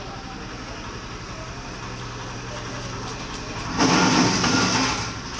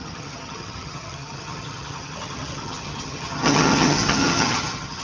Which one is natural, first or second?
first